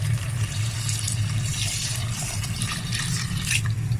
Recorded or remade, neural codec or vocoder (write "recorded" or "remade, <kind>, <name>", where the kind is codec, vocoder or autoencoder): remade, vocoder, BigVGAN v2